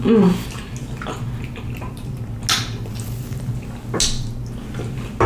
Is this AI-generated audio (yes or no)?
no